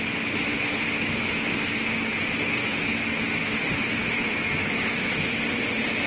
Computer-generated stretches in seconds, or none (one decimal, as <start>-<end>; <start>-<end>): 0.5-3.5; 4.0-5.3